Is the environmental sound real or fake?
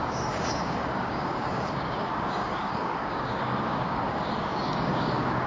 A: fake